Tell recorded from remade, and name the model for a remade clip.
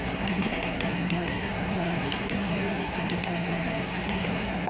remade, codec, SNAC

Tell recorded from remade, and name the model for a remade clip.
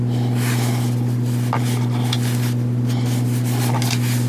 recorded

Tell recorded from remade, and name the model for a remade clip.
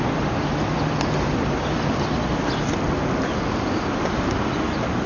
recorded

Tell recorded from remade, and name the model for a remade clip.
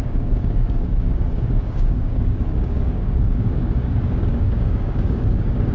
remade, codec, DAC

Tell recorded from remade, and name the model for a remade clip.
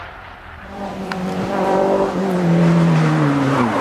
remade, vocoder, BigVGAN v2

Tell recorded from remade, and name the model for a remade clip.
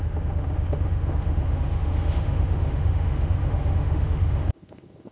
remade, autoencoder, DAC-VAE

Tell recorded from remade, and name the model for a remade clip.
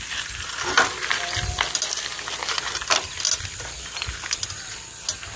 recorded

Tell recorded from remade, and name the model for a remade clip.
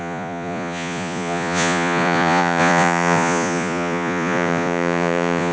remade, vocoder, Vocos